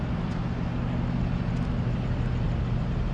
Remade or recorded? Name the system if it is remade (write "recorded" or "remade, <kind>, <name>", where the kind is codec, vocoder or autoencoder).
recorded